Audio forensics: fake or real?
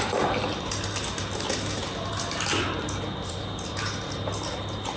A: real